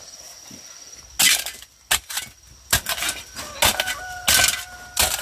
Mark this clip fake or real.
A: real